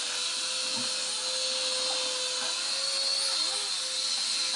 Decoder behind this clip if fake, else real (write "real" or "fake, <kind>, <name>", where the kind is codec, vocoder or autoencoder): real